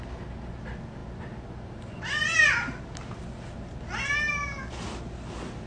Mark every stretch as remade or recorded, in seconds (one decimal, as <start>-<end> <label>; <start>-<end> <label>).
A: 0.0-5.7 recorded